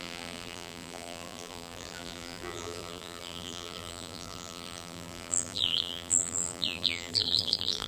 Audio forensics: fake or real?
fake